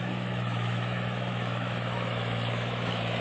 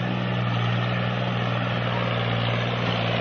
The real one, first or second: second